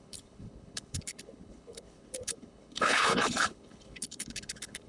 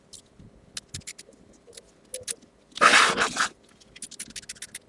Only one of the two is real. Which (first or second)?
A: second